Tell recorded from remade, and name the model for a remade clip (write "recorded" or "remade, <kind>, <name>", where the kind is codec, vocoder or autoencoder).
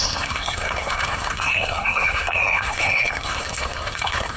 remade, codec, SNAC